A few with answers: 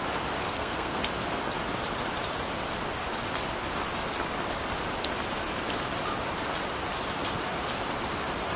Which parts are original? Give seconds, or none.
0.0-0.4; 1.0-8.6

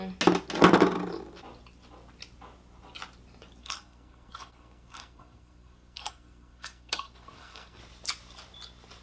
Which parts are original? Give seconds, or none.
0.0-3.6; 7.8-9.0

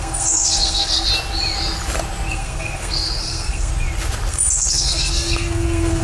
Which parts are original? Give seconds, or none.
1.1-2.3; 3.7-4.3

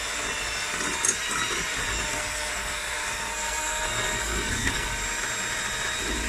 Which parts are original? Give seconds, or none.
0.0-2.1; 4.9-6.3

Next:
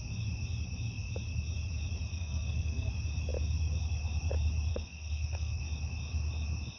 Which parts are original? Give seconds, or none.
0.0-2.1; 2.9-4.7; 5.6-6.8

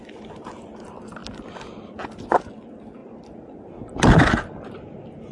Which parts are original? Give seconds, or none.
0.0-5.3

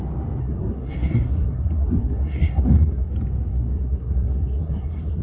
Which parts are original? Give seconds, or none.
0.0-0.4; 3.1-3.5

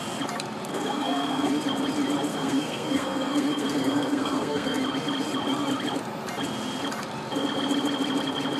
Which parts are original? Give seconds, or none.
0.0-0.7; 1.5-2.3; 4.8-8.6